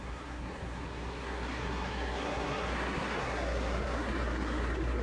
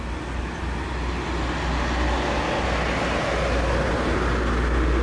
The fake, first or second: first